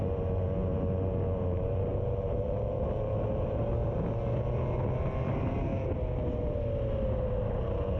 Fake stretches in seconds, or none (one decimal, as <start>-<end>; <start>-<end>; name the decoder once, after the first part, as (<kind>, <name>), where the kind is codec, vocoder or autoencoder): none